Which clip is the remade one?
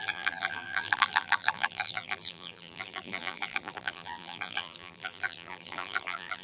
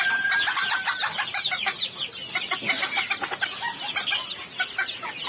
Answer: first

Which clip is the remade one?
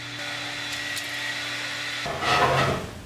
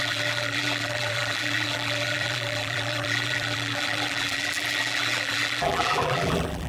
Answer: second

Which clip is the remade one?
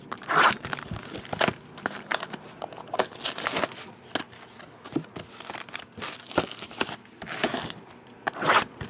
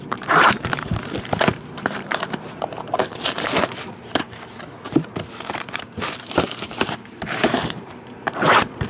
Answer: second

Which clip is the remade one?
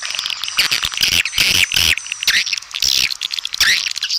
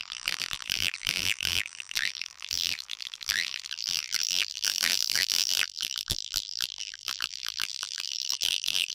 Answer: second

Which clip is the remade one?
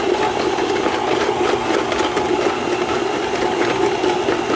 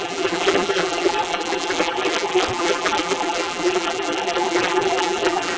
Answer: second